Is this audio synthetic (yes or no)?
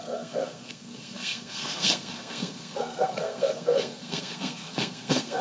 yes